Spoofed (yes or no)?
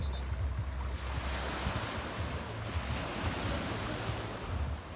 no